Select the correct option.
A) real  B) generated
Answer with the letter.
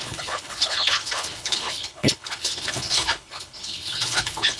B